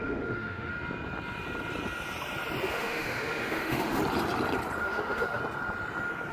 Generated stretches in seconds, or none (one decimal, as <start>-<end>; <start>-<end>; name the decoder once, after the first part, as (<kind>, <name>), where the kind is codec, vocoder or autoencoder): 0.0-0.7 (autoencoder, DAC-VAE); 2.7-4.0; 4.8-5.4